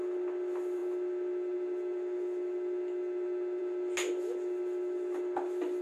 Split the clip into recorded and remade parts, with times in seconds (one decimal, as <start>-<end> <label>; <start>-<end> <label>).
0.0-5.8 recorded